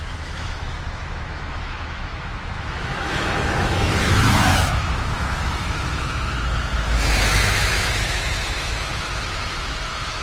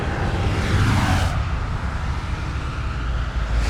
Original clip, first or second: second